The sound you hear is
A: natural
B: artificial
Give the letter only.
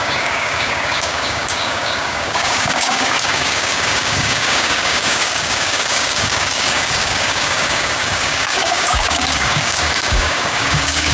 B